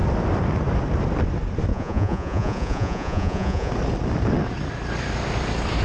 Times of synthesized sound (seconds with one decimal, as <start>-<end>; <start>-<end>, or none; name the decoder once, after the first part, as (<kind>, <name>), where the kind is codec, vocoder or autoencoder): 1.7-3.7 (vocoder, Vocos)